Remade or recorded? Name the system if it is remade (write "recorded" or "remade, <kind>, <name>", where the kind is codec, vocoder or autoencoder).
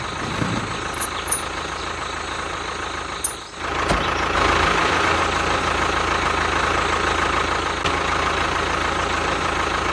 recorded